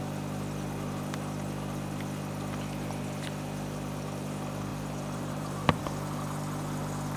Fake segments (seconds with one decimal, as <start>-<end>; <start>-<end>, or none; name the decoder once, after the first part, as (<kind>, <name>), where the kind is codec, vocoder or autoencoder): 4.7-5.8 (vocoder, BigVGAN v2)